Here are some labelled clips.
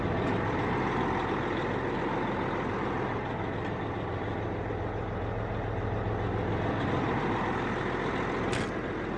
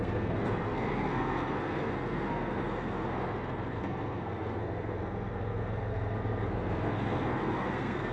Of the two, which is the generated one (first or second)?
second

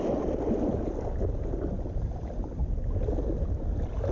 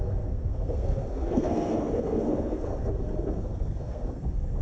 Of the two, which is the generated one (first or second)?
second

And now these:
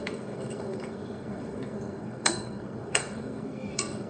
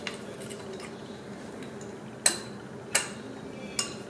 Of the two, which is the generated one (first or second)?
first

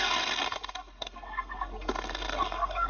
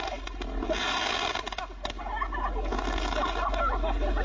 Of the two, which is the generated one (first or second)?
first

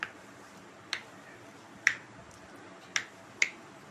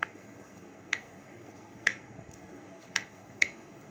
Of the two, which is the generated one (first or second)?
second